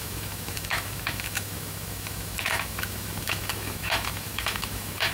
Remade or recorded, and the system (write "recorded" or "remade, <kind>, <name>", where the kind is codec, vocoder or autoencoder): remade, autoencoder, DAC-VAE